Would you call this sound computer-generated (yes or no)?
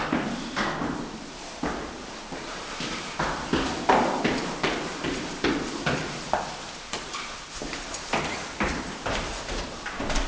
yes